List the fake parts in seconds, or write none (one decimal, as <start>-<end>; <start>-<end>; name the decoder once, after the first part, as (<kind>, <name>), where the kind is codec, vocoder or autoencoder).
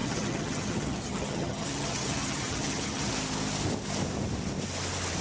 0.0-3.1 (vocoder, HiFi-GAN)